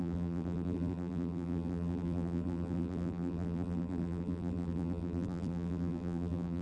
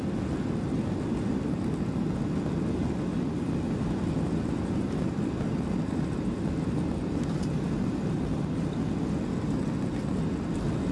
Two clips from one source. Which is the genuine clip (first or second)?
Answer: second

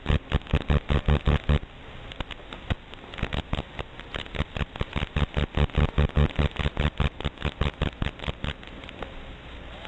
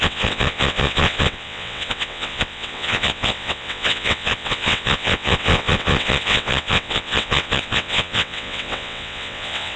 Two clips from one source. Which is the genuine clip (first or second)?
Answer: first